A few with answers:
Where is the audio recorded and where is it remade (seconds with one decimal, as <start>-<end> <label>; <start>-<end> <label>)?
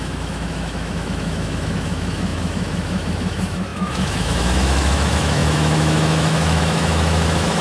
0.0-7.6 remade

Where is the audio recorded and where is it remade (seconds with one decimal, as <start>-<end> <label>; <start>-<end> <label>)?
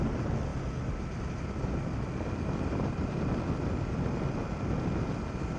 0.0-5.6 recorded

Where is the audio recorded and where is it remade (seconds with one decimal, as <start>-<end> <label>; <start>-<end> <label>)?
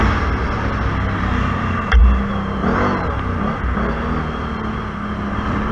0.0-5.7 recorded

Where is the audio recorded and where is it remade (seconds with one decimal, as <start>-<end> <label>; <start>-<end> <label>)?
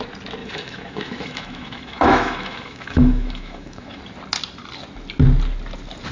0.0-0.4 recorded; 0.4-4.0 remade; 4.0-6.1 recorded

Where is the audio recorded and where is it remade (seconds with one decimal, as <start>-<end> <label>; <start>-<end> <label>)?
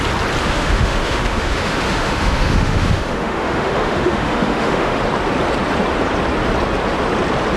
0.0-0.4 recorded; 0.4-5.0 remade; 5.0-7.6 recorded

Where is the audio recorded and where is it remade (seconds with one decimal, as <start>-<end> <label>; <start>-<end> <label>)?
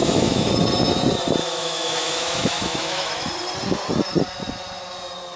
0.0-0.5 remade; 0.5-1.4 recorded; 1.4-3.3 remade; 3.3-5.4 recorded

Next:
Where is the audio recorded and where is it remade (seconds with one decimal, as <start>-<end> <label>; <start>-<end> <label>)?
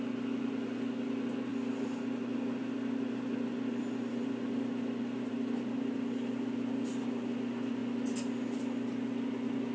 0.0-9.7 recorded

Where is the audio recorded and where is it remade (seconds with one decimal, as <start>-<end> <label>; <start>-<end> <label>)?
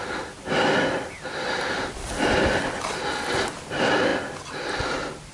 0.0-5.3 recorded